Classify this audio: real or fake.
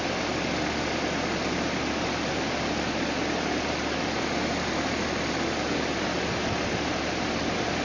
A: real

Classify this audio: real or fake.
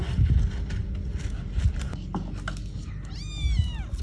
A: real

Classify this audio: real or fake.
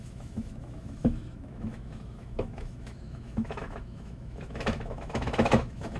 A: fake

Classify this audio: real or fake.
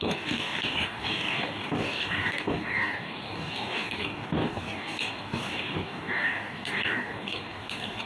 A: fake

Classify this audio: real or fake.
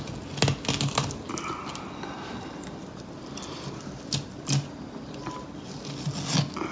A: real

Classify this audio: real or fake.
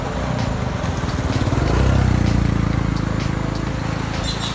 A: real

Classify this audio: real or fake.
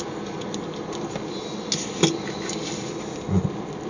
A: real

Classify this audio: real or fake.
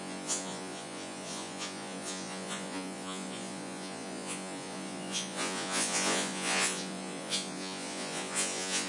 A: fake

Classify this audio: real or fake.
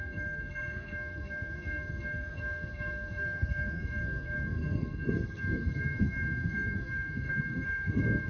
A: fake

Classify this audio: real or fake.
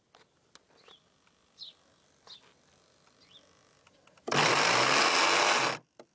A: real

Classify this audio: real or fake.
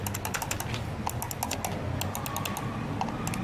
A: real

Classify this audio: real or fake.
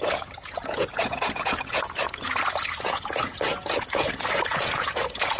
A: fake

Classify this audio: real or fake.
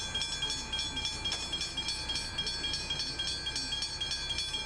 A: real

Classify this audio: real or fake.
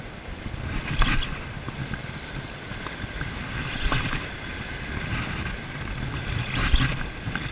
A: real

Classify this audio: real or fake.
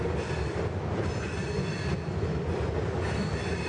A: real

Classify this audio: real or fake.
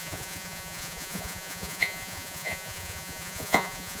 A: fake